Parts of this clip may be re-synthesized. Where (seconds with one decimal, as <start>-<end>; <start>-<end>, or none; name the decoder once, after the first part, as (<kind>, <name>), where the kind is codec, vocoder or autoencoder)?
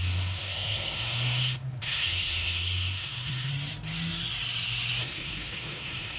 0.0-3.5 (codec, SNAC); 5.0-6.2